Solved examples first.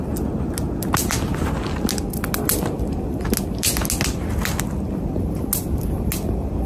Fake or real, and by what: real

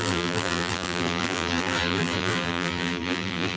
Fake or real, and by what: fake, vocoder, BigVGAN v2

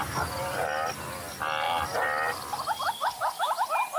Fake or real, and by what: real